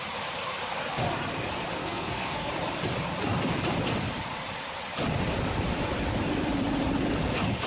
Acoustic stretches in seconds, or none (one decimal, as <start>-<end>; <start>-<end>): 0.0-1.8; 2.5-7.7